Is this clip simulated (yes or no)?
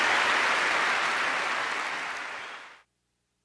no